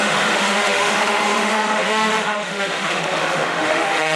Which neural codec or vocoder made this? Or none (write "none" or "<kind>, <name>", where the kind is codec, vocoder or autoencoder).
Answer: autoencoder, DAC-VAE